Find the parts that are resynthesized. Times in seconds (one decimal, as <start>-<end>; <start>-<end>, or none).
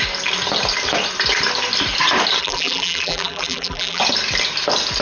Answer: 2.4-4.0